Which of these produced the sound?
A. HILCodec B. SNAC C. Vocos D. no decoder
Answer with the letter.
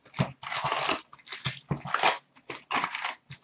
D